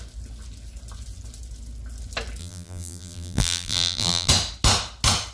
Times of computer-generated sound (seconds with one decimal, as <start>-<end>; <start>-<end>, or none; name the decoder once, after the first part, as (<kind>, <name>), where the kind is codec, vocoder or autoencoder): 2.4-4.3 (vocoder, BigVGAN v2)